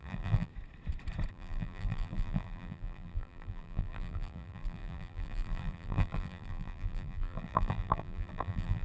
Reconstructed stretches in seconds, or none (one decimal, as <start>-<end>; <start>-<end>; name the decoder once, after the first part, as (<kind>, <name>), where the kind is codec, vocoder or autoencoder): 0.0-0.5 (vocoder, BigVGAN v2); 1.3-8.8